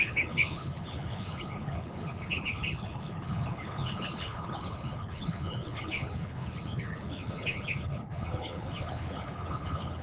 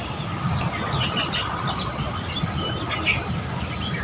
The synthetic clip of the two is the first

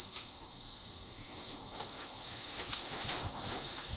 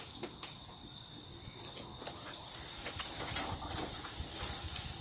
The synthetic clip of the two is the first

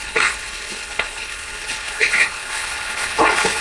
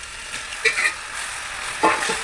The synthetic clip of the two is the first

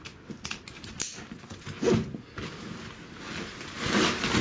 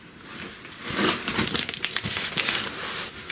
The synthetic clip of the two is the second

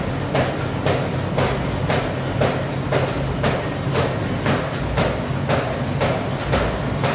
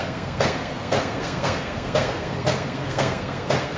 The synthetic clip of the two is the second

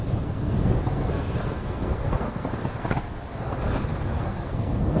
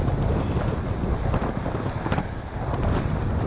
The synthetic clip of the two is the first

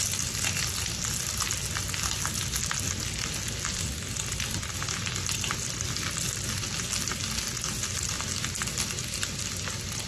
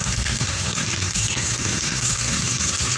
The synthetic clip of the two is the second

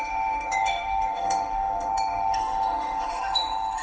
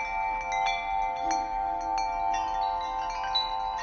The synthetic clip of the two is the first